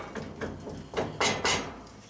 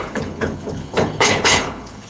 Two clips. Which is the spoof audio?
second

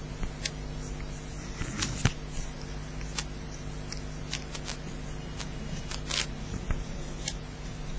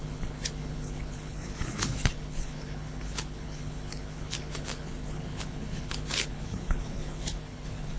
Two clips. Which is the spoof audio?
second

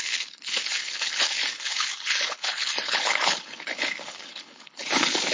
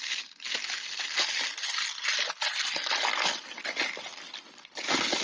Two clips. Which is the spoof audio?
first